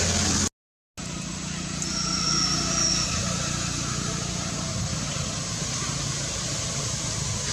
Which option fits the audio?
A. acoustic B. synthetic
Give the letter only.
A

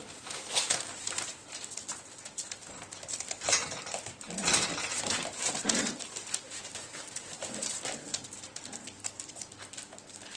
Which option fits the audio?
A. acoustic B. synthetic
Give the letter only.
A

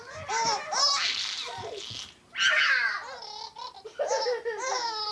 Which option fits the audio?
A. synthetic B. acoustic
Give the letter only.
B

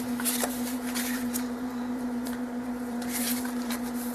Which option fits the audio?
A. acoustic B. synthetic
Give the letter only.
B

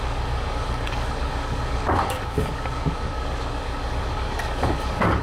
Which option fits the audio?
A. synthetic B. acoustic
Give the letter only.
A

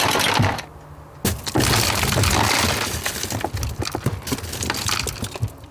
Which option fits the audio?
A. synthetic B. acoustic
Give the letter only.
B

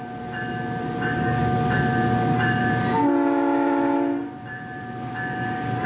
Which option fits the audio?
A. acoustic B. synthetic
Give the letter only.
A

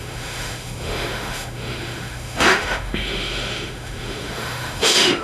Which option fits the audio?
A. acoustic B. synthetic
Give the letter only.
B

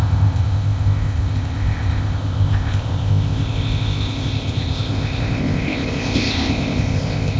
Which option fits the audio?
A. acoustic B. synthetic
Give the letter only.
B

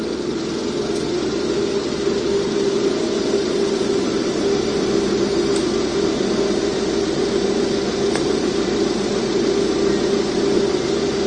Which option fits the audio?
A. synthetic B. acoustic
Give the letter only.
B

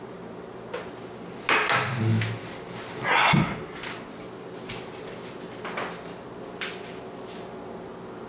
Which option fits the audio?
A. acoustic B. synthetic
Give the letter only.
A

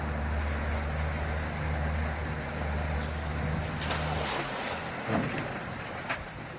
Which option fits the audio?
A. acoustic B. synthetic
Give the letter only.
A